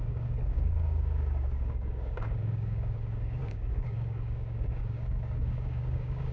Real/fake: fake